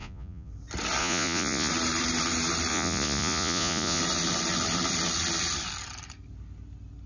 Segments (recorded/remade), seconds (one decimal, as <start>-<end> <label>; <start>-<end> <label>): 0.0-0.5 remade; 0.5-1.0 recorded; 1.0-1.7 remade; 1.7-2.7 recorded; 2.7-4.0 remade; 4.0-7.1 recorded